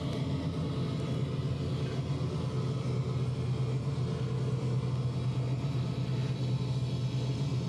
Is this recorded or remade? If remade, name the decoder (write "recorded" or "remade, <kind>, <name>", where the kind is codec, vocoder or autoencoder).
recorded